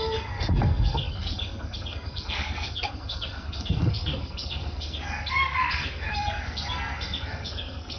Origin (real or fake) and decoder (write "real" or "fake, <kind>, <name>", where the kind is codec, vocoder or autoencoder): fake, codec, SNAC